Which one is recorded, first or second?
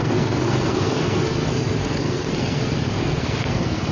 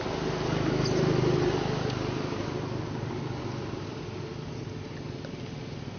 second